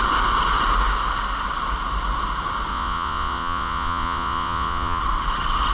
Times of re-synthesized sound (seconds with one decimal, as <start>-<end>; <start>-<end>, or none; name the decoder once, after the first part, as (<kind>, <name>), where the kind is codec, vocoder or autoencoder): 2.7-5.0 (vocoder, Vocos)